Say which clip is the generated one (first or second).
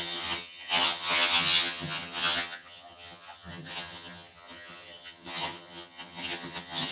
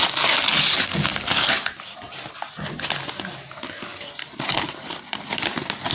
first